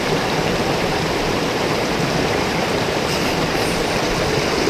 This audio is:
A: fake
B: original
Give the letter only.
A